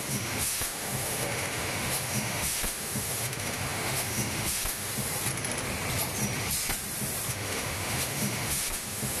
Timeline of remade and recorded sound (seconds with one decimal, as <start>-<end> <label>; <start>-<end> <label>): 0.0-4.9 remade; 4.9-7.3 recorded; 7.3-9.2 remade